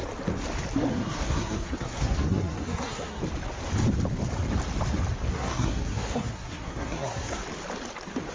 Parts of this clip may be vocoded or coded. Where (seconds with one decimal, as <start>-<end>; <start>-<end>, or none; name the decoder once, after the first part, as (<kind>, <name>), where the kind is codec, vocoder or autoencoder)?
0.9-3.2 (codec, SNAC); 5.3-7.4